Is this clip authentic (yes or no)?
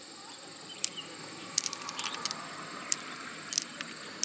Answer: no